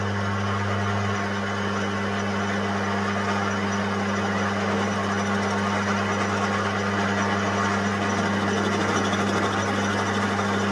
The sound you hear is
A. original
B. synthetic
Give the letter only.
A